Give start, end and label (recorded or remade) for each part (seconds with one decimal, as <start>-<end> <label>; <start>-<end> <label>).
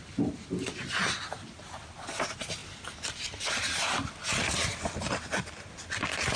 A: 0.0-6.4 recorded